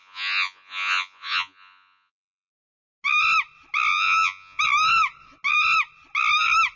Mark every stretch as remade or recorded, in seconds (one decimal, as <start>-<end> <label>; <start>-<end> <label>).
0.0-2.5 remade; 2.5-3.9 recorded; 3.9-4.6 remade; 4.6-6.8 recorded